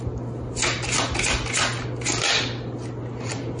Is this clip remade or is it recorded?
recorded